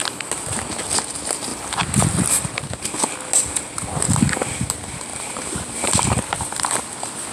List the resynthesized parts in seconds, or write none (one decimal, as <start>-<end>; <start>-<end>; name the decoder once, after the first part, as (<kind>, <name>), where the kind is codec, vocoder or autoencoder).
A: 5.1-6.2 (vocoder, BigVGAN v2)

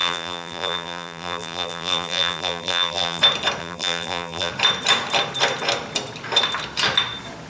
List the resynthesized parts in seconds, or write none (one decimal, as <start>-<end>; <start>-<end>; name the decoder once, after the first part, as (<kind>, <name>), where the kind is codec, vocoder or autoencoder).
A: 0.0-3.2 (vocoder, BigVGAN v2); 3.6-4.5

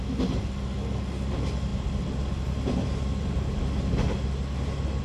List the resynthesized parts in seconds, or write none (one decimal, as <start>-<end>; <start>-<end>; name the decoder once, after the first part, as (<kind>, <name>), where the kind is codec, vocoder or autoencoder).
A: none

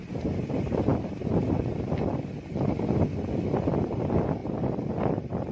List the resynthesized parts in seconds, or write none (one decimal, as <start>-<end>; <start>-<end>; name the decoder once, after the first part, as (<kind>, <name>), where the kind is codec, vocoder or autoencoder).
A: none

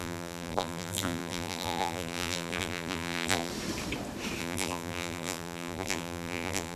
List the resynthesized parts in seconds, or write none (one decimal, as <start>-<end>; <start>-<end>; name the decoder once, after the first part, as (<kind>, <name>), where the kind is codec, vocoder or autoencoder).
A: 0.0-3.5 (vocoder, BigVGAN v2); 4.4-6.8

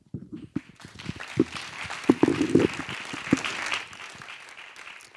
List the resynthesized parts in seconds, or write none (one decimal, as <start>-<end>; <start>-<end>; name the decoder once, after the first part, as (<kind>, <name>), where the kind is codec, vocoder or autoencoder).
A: none

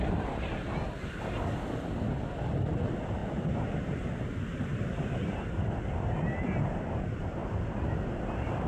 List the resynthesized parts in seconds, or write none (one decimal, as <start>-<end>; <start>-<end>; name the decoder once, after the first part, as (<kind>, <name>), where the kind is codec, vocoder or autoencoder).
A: 7.4-8.2 (vocoder, BigVGAN v2)